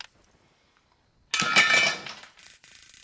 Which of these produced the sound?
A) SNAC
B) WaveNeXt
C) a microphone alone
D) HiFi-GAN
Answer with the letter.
C